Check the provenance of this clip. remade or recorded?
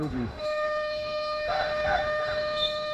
remade